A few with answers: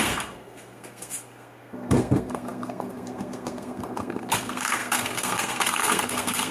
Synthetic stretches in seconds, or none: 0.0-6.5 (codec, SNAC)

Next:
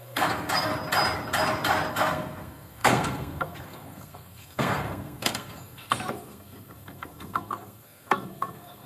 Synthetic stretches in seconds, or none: 0.0-0.7 (codec, SNAC); 1.9-8.9

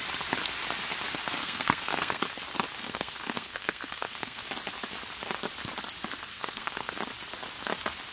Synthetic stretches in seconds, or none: 1.4-2.2 (codec, SNAC); 2.8-4.4; 6.3-7.0

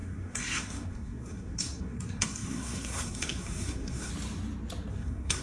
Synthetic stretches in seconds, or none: 0.0-4.1 (codec, SNAC); 4.9-5.4

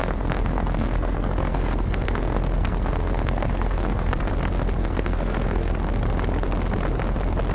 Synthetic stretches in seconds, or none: 0.0-4.3 (codec, SNAC); 4.8-5.7